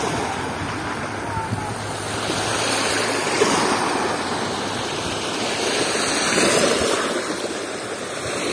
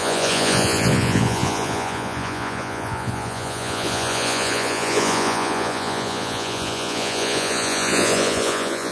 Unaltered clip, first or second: first